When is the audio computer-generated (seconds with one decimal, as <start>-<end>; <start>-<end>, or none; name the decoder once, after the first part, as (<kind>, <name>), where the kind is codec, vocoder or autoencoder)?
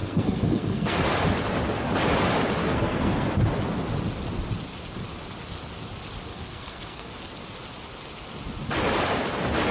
0.0-1.0 (codec, SNAC); 2.6-3.3; 6.3-7.1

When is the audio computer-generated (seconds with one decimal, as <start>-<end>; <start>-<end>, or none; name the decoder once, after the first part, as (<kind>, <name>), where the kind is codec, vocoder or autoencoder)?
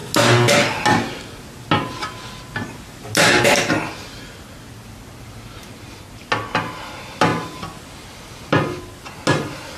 none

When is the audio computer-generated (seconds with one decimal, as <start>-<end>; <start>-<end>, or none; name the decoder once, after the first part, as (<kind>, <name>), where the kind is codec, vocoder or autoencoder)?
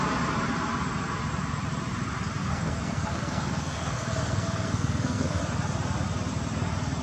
2.4-5.4 (codec, SNAC)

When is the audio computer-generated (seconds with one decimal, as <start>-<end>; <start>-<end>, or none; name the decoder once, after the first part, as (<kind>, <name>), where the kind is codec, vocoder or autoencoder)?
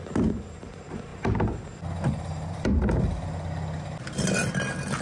none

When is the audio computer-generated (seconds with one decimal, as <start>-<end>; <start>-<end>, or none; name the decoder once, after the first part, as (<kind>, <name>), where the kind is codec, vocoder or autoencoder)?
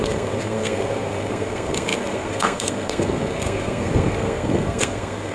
0.0-5.3 (codec, SNAC)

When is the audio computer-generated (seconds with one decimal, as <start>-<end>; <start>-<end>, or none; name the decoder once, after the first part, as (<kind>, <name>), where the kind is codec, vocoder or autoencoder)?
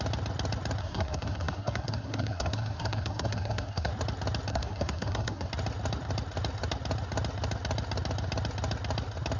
0.8-3.9 (codec, SNAC); 4.5-5.5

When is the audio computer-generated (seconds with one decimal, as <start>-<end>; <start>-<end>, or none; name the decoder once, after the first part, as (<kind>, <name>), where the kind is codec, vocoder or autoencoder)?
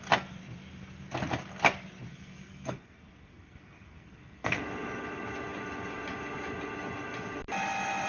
2.1-4.6 (codec, SNAC)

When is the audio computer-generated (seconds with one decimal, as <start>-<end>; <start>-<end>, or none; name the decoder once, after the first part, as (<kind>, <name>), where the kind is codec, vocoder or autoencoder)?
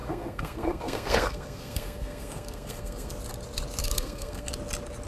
0.0-3.1 (codec, SNAC); 3.8-4.5